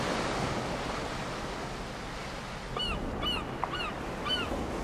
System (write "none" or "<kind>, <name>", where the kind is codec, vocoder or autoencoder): none